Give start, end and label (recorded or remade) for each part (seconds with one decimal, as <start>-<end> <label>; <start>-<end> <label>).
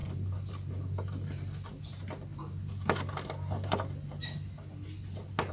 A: 0.0-5.5 recorded